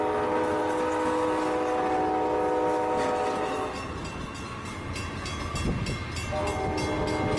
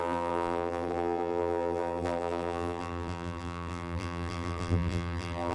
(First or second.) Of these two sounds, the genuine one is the first